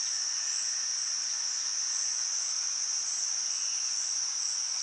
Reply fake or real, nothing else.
fake